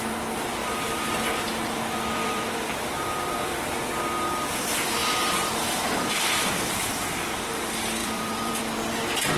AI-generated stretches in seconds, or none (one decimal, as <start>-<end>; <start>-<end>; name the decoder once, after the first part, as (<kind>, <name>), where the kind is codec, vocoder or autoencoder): 0.6-3.5 (vocoder, BigVGAN v2); 5.0-7.5; 8.0-8.7